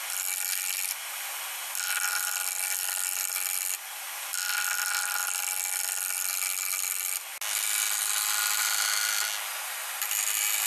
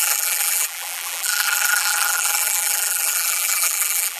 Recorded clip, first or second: first